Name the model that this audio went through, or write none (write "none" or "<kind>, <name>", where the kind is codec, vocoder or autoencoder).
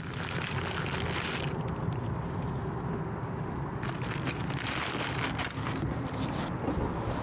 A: none